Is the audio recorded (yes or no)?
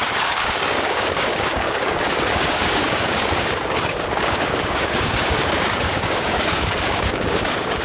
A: no